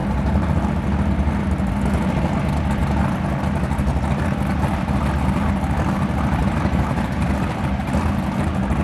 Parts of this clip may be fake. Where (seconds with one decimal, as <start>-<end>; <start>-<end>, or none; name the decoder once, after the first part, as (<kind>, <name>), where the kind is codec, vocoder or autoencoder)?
6.4-7.3 (vocoder, BigVGAN v2)